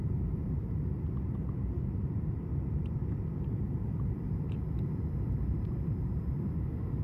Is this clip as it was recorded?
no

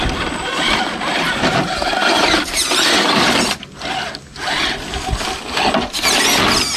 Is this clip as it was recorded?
yes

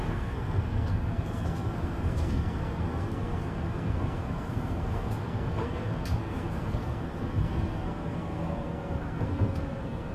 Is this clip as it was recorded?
no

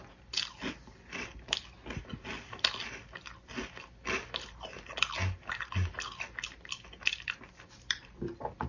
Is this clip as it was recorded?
yes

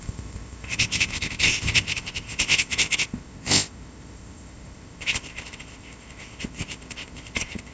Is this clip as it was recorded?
no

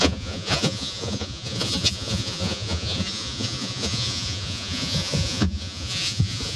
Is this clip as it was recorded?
no